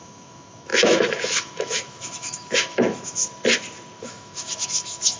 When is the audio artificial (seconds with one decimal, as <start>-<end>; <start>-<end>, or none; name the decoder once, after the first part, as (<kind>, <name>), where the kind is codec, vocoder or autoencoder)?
0.0-3.2 (autoencoder, DAC-VAE); 4.0-5.2